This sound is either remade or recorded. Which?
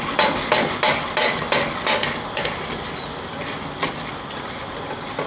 recorded